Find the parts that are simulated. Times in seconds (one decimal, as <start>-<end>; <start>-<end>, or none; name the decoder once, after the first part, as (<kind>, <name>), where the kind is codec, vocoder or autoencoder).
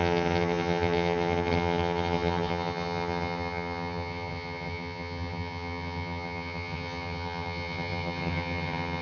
0.0-9.0 (vocoder, HiFi-GAN)